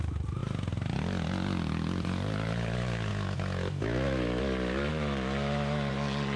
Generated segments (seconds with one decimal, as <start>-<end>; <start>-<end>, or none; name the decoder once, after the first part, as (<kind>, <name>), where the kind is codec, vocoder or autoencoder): 3.1-4.4 (autoencoder, DAC-VAE); 4.9-5.9

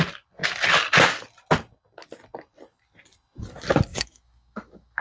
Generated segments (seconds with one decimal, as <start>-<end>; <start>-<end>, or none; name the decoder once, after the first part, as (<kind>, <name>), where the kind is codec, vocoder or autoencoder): 3.9-5.0 (autoencoder, DAC-VAE)

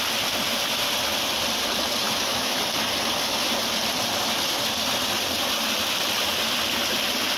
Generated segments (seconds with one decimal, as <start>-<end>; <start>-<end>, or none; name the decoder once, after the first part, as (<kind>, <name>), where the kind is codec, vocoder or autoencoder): 2.0-2.6 (autoencoder, DAC-VAE)

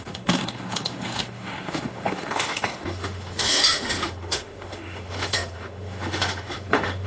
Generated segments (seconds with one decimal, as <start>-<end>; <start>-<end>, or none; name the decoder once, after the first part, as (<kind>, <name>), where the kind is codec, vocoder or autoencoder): 0.0-7.1 (autoencoder, DAC-VAE)

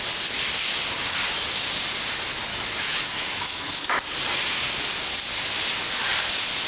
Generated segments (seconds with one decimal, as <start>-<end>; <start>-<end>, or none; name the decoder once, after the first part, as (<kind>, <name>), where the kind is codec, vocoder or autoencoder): 2.5-3.7 (autoencoder, DAC-VAE)

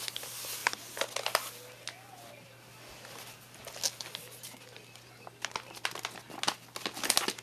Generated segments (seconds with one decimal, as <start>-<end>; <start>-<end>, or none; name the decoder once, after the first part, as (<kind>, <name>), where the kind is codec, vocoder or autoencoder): none

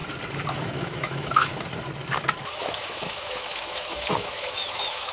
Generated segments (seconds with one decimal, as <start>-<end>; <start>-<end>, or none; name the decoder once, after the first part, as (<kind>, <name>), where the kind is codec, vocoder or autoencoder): 0.5-1.5 (autoencoder, DAC-VAE); 2.6-5.1

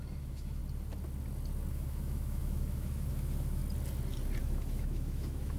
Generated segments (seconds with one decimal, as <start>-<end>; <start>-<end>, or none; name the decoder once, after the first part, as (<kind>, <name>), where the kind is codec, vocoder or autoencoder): 0.0-0.6 (autoencoder, DAC-VAE); 1.7-3.6; 4.4-5.6